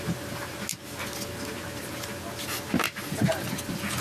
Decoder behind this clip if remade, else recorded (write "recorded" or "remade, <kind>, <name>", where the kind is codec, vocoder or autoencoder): recorded